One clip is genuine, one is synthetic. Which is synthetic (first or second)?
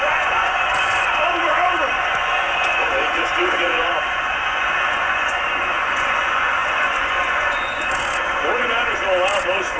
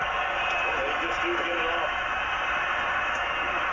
first